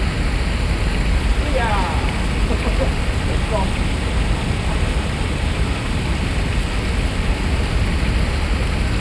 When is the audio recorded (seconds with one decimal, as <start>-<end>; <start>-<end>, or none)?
0.0-9.0